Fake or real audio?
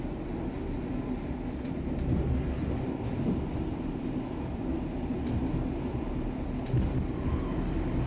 real